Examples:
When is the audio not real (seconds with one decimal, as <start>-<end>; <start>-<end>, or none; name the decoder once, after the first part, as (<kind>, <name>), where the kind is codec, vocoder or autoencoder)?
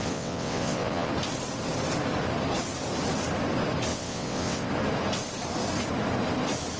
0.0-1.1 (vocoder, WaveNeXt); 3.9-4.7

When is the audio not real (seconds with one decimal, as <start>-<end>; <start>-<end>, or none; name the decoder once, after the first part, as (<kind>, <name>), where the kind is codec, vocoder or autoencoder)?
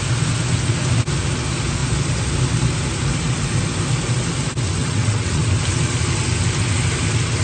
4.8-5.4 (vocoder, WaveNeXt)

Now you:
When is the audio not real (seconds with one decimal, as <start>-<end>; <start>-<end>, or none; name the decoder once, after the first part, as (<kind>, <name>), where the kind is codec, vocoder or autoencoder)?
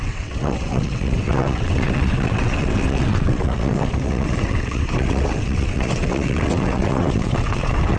0.0-8.0 (vocoder, WaveNeXt)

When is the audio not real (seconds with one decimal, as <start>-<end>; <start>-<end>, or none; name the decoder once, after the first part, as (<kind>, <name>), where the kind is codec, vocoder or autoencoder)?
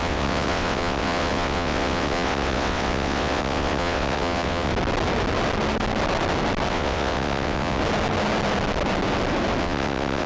0.0-4.7 (vocoder, WaveNeXt); 6.7-7.8; 9.6-10.3